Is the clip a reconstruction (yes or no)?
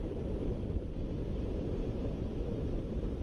yes